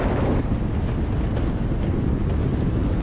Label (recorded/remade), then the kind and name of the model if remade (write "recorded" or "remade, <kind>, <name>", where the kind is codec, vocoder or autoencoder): recorded